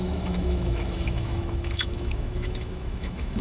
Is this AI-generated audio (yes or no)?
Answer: yes